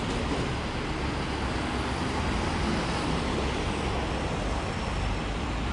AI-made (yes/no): no